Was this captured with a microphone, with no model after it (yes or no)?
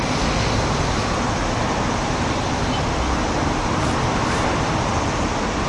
yes